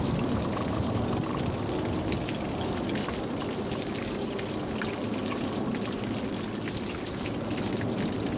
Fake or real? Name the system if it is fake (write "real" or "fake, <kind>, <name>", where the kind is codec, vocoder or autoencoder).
real